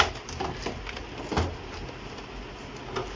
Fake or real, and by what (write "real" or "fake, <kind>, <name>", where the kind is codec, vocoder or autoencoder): real